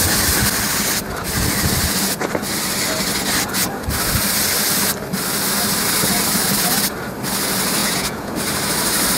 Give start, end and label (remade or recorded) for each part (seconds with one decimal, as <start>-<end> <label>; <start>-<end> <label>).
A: 0.0-7.8 recorded; 7.8-8.3 remade; 8.3-9.2 recorded